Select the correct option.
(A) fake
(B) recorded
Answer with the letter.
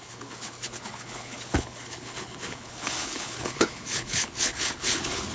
A